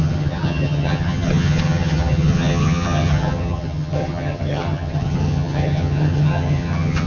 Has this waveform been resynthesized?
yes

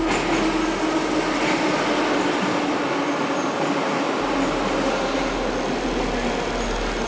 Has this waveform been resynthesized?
no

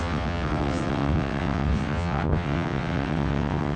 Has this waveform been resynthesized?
yes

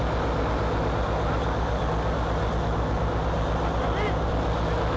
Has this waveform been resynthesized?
no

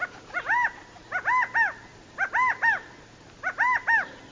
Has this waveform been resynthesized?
no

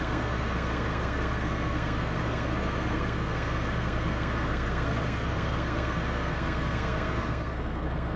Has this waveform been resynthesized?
yes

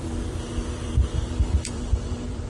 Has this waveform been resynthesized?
yes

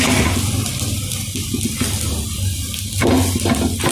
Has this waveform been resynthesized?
no